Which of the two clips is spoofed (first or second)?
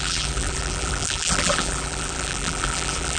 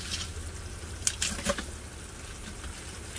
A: first